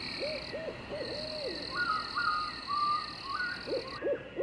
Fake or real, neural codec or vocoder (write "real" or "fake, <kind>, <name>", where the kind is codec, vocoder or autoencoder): real